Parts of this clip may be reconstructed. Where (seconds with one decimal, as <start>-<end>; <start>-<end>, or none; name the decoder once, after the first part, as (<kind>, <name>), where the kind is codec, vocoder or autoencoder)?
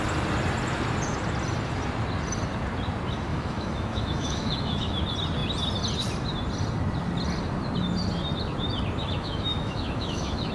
3.3-5.0 (autoencoder, DAC-VAE); 9.0-10.5